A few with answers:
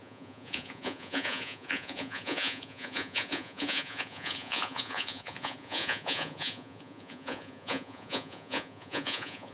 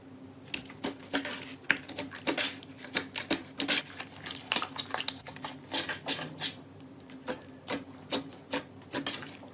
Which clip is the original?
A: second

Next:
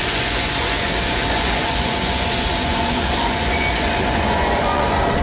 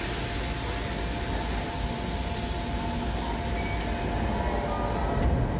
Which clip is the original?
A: second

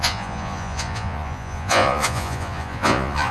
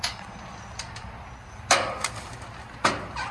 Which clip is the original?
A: second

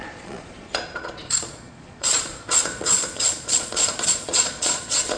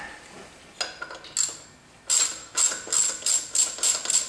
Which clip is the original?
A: second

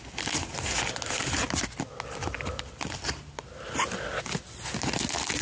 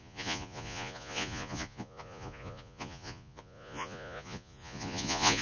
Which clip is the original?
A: first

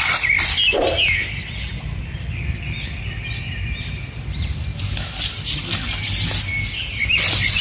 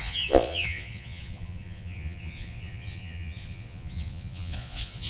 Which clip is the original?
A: first